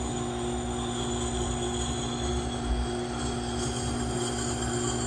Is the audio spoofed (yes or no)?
no